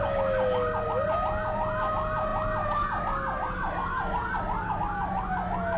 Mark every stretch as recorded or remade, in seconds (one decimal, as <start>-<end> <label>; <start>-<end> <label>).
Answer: 0.0-5.8 recorded